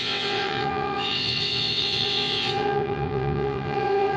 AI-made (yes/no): yes